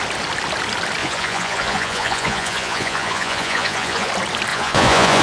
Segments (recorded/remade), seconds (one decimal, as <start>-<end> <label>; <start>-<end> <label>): 0.0-1.0 recorded; 1.0-4.1 remade; 4.1-4.5 recorded; 4.5-5.2 remade